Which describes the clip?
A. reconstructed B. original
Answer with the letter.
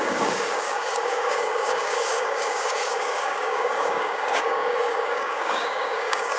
A